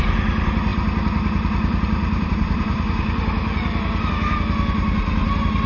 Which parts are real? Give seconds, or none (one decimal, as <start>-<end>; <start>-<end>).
0.0-0.7; 4.1-5.7